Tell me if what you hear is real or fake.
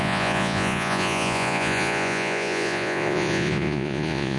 fake